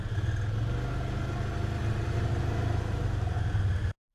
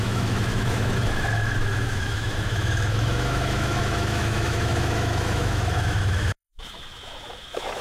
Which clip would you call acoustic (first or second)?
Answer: first